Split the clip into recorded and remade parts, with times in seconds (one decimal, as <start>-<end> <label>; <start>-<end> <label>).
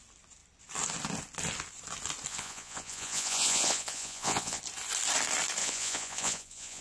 0.0-2.3 recorded; 2.3-4.6 remade; 4.6-5.6 recorded; 5.6-6.8 remade